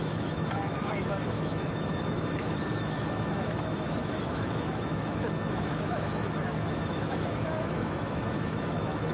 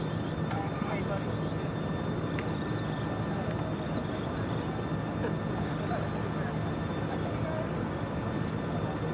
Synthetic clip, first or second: first